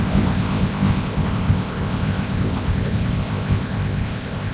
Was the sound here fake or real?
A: fake